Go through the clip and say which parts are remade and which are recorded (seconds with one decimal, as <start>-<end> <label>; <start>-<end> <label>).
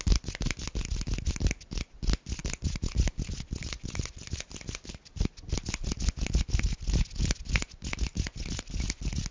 0.0-9.3 recorded